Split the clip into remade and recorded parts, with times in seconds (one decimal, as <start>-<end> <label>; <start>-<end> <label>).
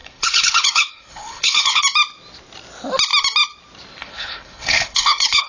0.0-1.8 remade; 1.8-4.0 recorded; 4.0-5.5 remade